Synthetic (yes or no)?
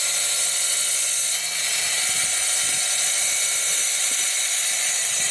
no